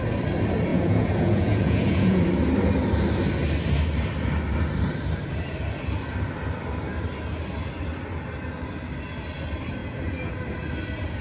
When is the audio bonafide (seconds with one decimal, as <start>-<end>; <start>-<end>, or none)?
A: 0.0-0.7; 2.2-9.8; 10.3-11.2